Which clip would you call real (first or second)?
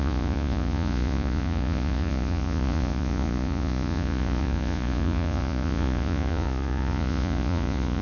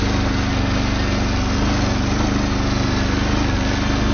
second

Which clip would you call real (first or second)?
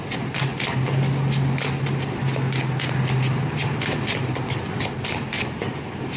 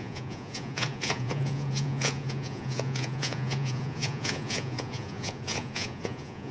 first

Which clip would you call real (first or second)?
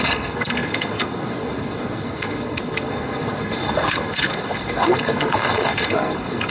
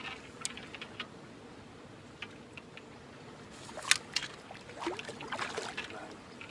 second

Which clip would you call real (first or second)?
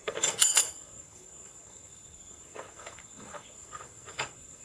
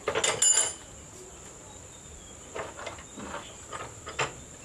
second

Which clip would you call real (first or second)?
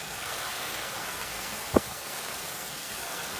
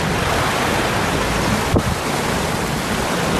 second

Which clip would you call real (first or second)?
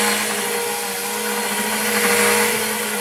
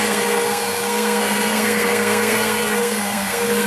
first